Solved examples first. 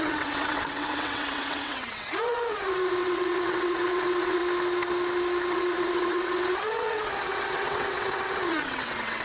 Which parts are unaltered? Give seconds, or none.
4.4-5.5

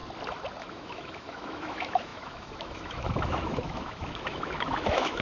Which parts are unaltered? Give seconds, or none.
0.0-0.6

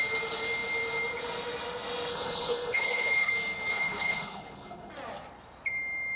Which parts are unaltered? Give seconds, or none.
0.0-2.1; 3.3-3.7; 4.9-6.2

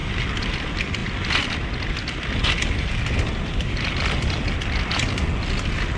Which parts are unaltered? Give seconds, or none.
0.0-6.0

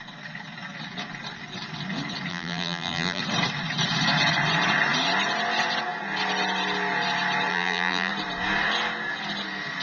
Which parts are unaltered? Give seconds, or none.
0.0-2.3; 3.2-7.5; 8.1-9.8

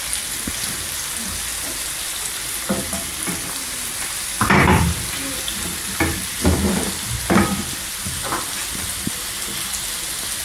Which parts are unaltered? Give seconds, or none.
0.0-10.4